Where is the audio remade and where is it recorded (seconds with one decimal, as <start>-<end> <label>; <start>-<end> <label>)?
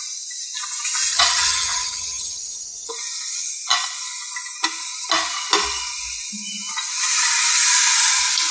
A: 0.0-1.1 recorded; 1.1-2.9 remade; 2.9-8.5 recorded